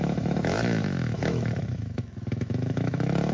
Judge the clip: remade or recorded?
remade